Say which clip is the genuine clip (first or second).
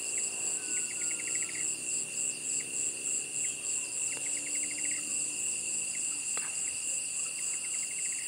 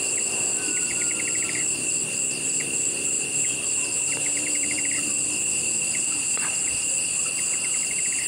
first